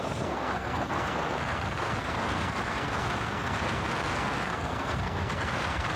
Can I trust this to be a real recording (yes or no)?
no